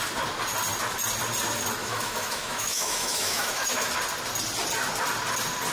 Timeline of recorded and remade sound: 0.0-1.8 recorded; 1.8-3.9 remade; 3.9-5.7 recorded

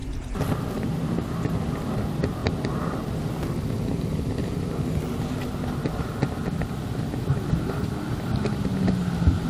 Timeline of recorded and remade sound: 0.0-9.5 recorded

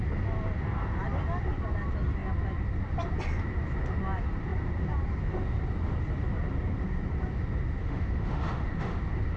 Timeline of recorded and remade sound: 0.0-7.8 recorded; 7.8-9.0 remade; 9.0-9.4 recorded

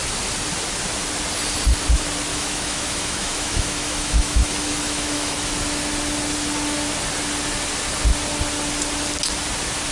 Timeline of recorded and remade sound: 0.0-2.3 recorded; 2.3-5.5 remade; 5.5-9.9 recorded

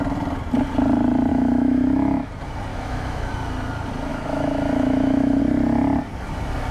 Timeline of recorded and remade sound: 0.0-1.3 recorded; 1.3-2.3 remade; 2.3-2.7 recorded; 2.7-3.3 remade; 3.3-4.1 recorded; 4.1-5.4 remade; 5.4-6.7 recorded

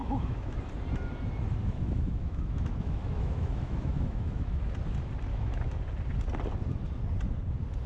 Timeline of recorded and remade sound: 0.0-0.6 remade; 0.6-1.6 recorded; 1.6-4.6 remade; 4.6-5.3 recorded; 5.3-5.8 remade; 5.8-7.9 recorded

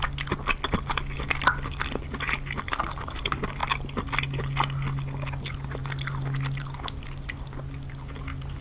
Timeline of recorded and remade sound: 0.0-8.6 recorded

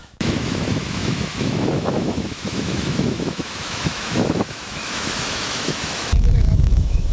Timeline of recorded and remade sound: 0.0-7.1 remade